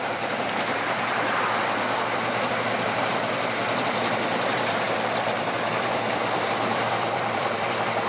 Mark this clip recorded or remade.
remade